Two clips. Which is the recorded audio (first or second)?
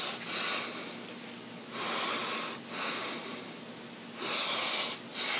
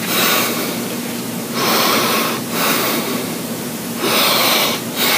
first